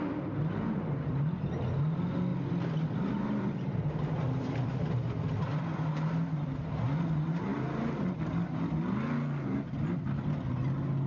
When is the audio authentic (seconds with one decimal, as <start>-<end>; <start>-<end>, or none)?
0.0-2.3; 5.9-11.1